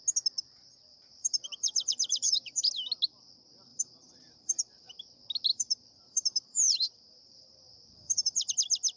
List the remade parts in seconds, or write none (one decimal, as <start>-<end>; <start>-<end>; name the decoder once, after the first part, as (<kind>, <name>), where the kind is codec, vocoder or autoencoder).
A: 0.9-2.7 (vocoder, BigVGAN v2); 3.7-5.0; 5.5-8.5